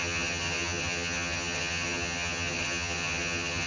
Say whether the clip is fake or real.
fake